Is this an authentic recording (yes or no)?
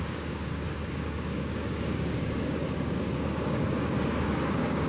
no